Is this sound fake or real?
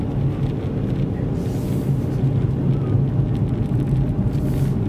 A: real